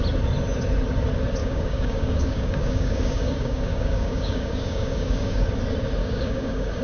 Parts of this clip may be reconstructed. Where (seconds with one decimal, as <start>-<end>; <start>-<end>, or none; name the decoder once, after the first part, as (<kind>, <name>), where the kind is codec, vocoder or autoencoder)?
1.4-5.5 (codec, DAC); 6.0-6.8